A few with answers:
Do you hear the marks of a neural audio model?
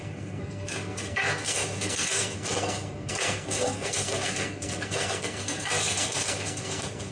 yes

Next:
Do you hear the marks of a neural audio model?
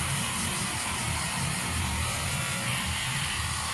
yes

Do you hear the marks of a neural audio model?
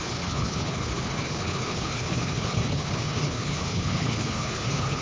yes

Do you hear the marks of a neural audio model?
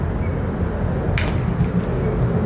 no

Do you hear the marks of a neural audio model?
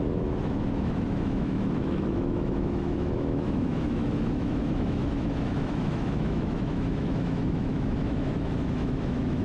yes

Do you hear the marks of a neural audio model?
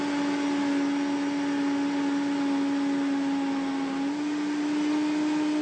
no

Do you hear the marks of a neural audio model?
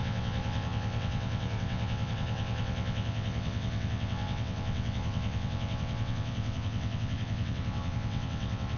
yes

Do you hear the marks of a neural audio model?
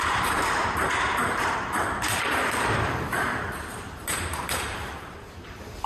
yes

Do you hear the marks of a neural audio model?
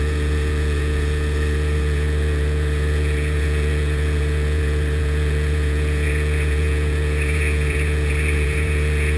yes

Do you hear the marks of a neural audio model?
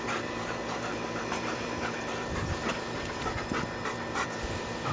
yes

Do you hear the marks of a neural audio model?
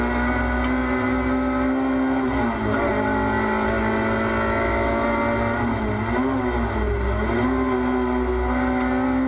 no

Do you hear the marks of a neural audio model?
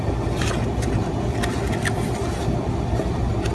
no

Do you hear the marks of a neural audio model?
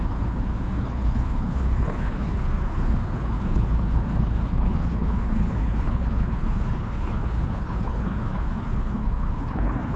yes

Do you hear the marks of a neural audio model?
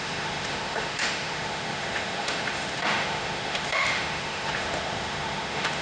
yes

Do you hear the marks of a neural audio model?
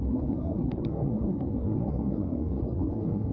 yes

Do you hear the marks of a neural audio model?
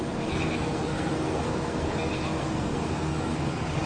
yes